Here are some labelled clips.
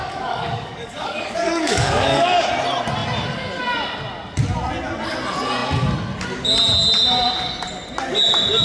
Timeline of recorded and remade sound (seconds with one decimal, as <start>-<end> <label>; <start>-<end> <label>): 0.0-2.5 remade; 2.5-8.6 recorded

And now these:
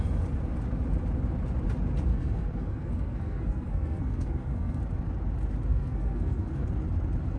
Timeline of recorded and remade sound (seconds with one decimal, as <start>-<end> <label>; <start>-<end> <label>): 0.0-2.1 recorded; 2.1-4.8 remade; 4.8-5.7 recorded; 5.7-6.7 remade; 6.7-7.4 recorded

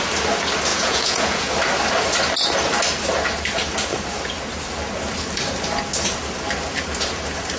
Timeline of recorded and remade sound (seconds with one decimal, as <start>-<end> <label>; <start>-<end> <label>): 0.0-0.7 recorded; 0.7-1.5 remade; 1.5-7.6 recorded

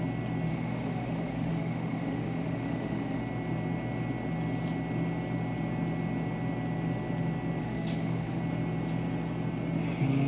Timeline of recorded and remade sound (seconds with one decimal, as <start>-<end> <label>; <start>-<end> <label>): 0.0-0.5 recorded; 0.5-3.2 remade; 3.2-7.6 recorded; 7.6-8.4 remade; 8.4-10.3 recorded

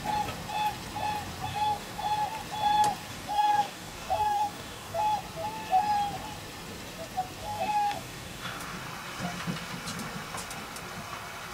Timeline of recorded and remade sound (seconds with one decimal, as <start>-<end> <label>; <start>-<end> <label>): 0.0-1.5 recorded; 1.5-2.0 remade; 2.0-3.1 recorded; 3.1-5.0 remade; 5.0-7.4 recorded; 7.4-8.8 remade; 8.8-11.5 recorded